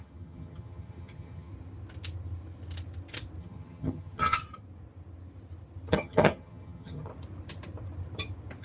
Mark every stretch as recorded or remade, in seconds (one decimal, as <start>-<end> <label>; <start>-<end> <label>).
0.0-1.5 remade; 1.5-3.4 recorded; 3.4-4.4 remade; 4.4-5.9 recorded; 5.9-7.1 remade; 7.1-8.6 recorded